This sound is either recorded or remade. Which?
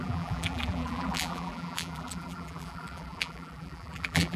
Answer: remade